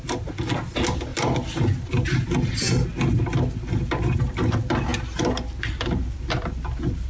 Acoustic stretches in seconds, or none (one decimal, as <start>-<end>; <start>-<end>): 0.0-7.1